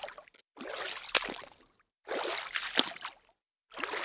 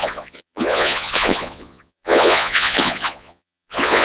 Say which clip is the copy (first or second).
second